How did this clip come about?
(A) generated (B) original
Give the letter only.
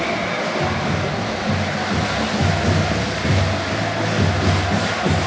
B